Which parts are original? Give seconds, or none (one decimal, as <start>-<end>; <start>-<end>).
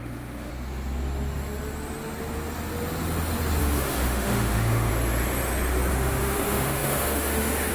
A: 0.5-3.6; 4.9-5.9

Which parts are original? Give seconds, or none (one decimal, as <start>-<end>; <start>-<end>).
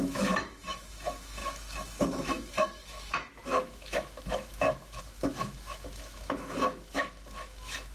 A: none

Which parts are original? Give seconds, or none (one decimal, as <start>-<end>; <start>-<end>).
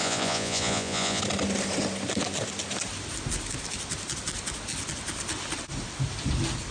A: 1.2-6.7